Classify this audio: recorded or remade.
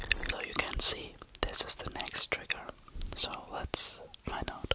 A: recorded